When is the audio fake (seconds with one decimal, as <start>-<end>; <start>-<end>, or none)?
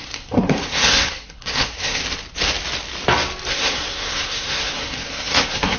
0.0-2.0; 3.5-5.8